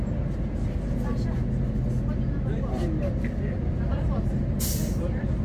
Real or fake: real